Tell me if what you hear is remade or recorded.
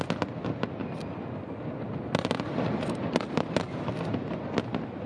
recorded